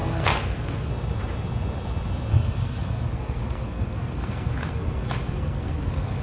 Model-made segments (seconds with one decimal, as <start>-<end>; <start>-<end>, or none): 0.0-0.9; 2.3-6.2